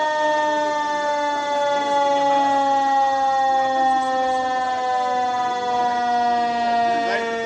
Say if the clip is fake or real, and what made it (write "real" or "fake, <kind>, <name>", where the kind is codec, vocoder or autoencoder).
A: real